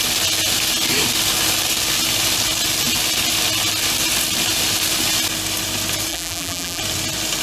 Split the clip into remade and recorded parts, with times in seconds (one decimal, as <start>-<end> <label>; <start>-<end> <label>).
0.0-6.1 recorded; 6.1-6.8 remade; 6.8-7.4 recorded